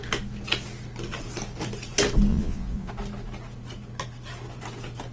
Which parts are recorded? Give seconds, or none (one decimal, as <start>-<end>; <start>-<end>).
0.0-2.3; 2.9-5.1

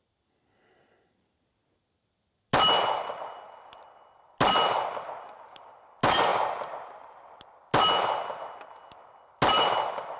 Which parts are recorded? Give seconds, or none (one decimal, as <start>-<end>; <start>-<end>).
0.0-10.2

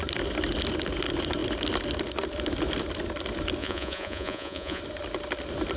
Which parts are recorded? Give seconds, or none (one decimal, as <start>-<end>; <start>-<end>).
0.0-3.6; 4.8-5.8

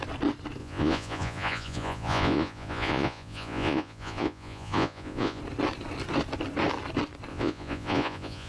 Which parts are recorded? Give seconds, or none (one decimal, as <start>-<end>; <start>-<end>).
0.0-0.6; 5.4-7.3

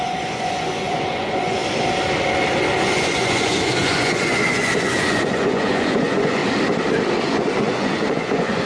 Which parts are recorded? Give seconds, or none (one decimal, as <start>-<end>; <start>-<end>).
1.6-2.8; 6.4-7.2

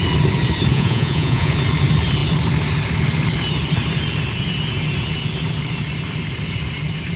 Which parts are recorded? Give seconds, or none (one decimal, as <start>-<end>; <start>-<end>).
0.0-0.7; 1.5-7.2

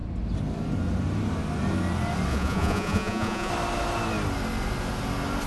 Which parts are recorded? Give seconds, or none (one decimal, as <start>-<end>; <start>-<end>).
0.0-2.3; 3.5-5.5